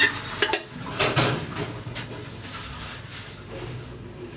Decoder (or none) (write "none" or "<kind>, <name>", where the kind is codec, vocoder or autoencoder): none